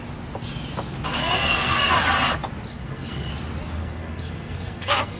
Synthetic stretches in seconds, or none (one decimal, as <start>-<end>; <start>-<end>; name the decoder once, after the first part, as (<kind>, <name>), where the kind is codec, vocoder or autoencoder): 1.2-1.9 (codec, SNAC); 2.7-3.3; 3.8-5.2